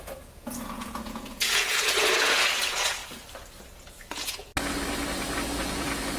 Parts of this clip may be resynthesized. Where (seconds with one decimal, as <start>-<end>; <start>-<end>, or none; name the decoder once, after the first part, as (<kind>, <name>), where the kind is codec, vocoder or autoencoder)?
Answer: 0.0-3.0 (vocoder, Vocos); 3.6-4.5; 5.6-6.2

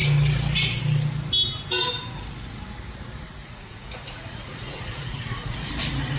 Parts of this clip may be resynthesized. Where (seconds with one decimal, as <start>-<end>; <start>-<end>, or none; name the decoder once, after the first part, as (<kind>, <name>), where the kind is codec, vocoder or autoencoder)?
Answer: 3.4-5.7 (vocoder, Vocos)